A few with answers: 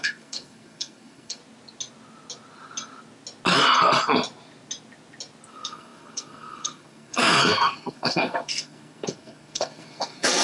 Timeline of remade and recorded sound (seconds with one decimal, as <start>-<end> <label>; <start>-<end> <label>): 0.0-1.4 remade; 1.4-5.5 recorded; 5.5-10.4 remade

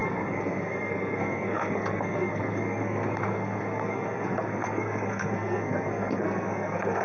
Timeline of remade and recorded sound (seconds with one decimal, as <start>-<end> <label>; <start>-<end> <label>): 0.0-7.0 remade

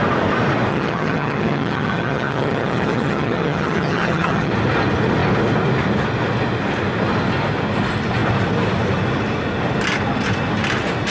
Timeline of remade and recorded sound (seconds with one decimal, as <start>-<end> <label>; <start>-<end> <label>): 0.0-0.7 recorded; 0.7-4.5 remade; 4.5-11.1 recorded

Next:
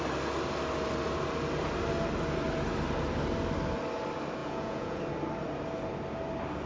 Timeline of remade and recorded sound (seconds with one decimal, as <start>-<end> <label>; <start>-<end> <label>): 0.0-4.4 recorded; 4.4-5.0 remade; 5.0-6.7 recorded